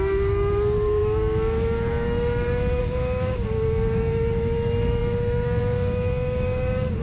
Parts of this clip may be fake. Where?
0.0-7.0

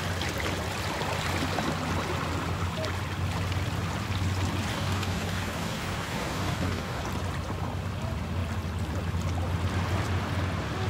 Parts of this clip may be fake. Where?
4.7-7.0

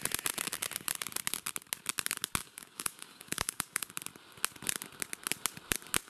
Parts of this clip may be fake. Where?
2.4-3.9

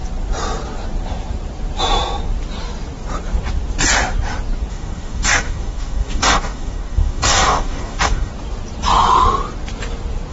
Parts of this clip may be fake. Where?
4.7-8.3